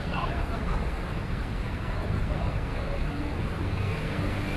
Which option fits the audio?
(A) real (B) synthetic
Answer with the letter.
B